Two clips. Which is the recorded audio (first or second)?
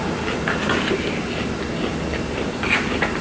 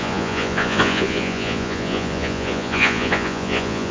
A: first